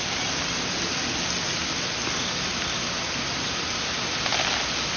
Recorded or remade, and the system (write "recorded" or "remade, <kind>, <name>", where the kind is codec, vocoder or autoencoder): recorded